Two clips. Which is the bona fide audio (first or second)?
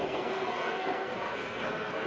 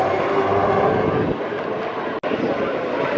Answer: second